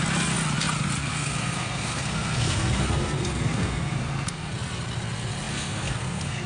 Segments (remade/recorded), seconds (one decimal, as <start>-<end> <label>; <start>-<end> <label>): 0.0-1.0 recorded; 1.0-4.5 remade; 4.5-5.5 recorded; 5.5-6.5 remade